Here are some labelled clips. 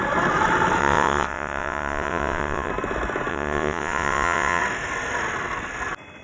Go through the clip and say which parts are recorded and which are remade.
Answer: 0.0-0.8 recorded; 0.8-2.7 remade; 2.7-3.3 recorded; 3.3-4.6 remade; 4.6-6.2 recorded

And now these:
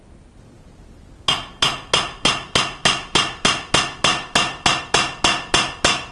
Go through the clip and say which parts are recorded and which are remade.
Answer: 0.0-6.1 recorded

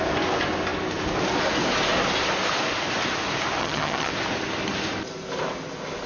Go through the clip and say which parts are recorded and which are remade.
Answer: 0.0-3.6 recorded; 3.6-4.1 remade; 4.1-6.1 recorded

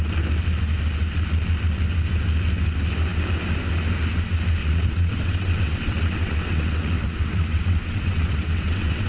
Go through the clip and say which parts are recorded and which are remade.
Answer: 0.0-4.6 recorded; 4.6-9.1 remade

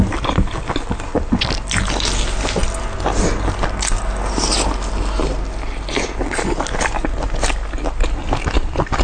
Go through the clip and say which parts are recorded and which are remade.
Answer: 0.0-9.0 recorded

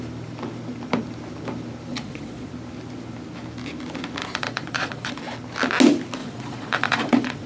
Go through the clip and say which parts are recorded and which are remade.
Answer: 0.0-1.9 recorded; 1.9-2.5 remade; 2.5-4.2 recorded; 4.2-5.2 remade; 5.2-6.2 recorded; 6.2-7.5 remade